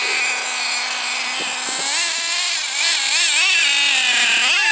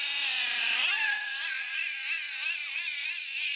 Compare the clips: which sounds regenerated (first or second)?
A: second